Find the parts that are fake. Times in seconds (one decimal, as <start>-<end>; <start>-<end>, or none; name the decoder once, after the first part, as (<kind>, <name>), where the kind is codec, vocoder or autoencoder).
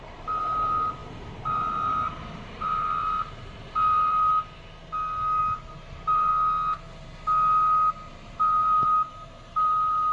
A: 0.0-4.3 (vocoder, BigVGAN v2); 5.4-6.3; 8.1-10.1